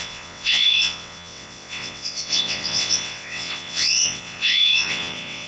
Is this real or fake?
fake